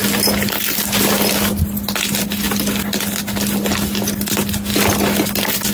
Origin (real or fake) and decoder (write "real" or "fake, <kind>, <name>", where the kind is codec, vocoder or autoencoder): real